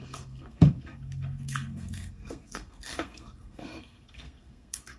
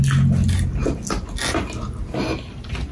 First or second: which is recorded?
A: second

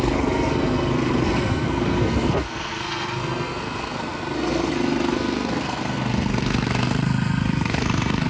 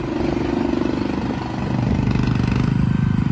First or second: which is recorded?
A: second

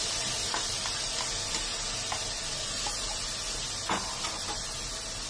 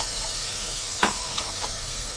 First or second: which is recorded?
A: first